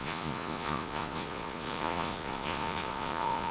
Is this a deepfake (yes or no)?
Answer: yes